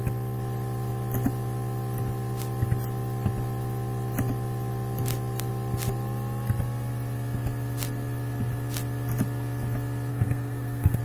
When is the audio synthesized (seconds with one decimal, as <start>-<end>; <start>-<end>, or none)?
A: 10.1-11.0